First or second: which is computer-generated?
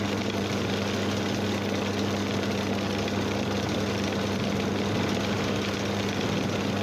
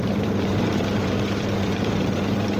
second